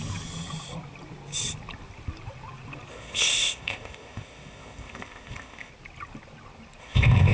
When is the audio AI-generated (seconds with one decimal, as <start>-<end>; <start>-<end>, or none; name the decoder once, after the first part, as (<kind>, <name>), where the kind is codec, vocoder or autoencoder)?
2.9-5.7 (codec, ZipCodec); 6.8-7.3